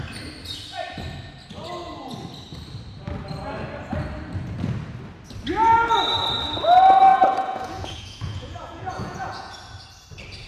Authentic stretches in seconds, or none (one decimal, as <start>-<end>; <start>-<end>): 0.0-7.1; 9.6-10.5